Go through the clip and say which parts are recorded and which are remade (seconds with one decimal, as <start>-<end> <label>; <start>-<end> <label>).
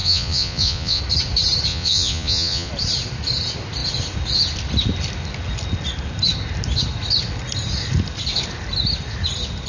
0.0-1.0 remade; 1.0-1.7 recorded; 1.7-2.7 remade; 2.7-9.7 recorded